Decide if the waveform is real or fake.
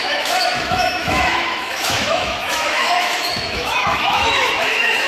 fake